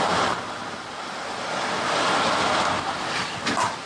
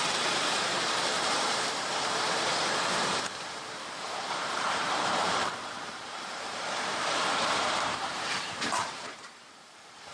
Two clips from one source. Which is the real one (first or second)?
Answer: first